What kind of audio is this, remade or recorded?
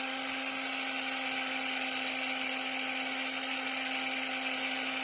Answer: recorded